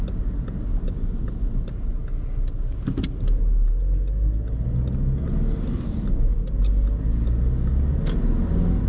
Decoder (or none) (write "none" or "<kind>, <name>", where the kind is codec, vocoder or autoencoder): none